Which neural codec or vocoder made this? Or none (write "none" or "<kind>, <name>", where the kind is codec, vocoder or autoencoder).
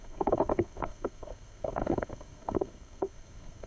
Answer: codec, SNAC